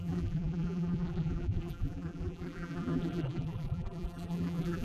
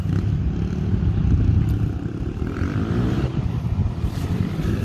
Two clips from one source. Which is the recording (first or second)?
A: second